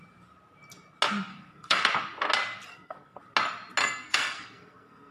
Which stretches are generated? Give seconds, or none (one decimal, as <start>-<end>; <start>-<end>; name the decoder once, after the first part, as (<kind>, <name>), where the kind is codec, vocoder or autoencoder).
1.3-1.9 (codec, SNAC); 2.7-3.2; 3.8-5.1